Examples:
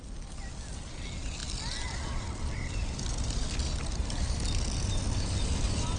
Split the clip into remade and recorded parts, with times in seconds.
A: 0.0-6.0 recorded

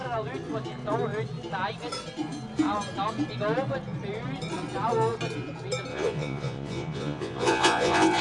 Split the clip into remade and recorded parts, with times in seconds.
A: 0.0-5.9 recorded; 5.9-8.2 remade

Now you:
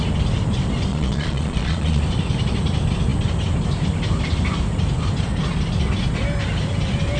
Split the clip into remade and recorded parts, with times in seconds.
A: 0.0-0.9 recorded; 0.9-2.0 remade; 2.0-7.2 recorded

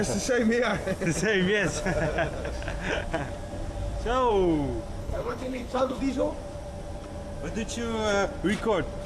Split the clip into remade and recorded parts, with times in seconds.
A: 0.0-5.0 recorded; 5.0-6.0 remade; 6.0-9.1 recorded